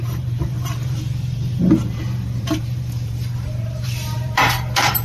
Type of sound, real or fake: fake